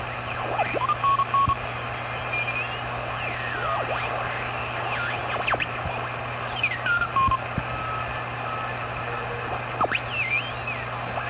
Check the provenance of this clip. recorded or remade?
recorded